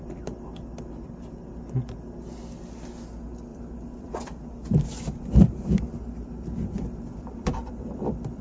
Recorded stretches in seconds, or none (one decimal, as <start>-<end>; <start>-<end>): 0.0-3.5